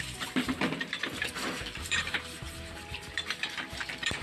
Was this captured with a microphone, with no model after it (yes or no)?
no